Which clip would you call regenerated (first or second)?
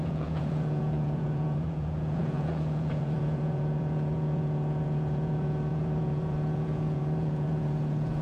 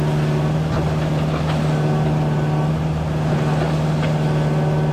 first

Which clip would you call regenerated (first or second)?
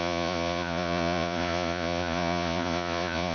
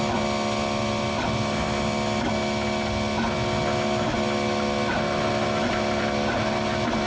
first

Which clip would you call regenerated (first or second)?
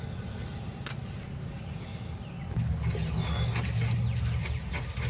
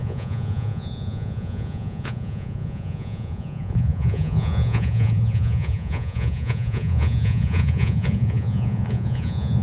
second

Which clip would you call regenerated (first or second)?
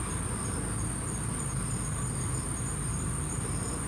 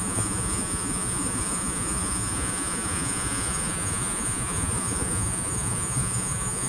second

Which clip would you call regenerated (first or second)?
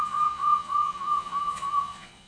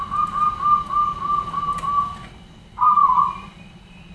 first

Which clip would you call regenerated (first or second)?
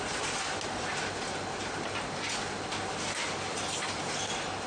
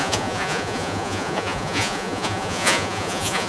second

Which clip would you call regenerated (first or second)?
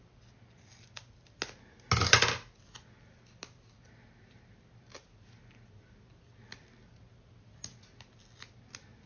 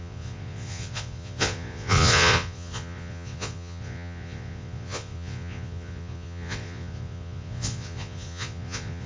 second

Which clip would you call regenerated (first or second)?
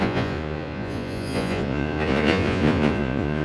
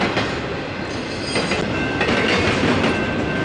first